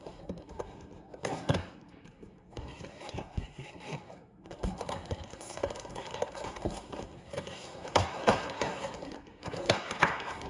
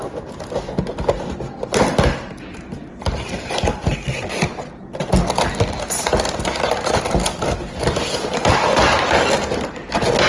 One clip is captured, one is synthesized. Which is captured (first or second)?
second